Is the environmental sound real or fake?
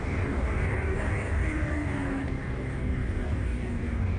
fake